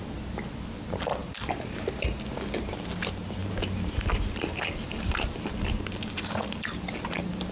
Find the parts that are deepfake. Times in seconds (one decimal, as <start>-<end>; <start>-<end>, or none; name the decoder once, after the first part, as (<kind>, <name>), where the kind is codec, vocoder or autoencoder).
none